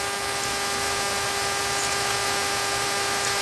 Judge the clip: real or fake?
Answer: real